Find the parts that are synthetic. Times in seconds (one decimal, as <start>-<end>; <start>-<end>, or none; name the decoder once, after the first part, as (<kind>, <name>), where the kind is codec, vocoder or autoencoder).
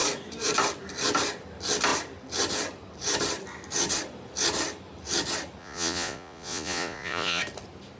5.6-7.4 (vocoder, Vocos)